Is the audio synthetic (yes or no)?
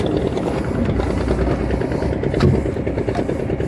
no